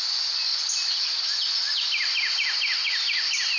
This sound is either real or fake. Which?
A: real